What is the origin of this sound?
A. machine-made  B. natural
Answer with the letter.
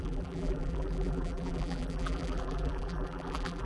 A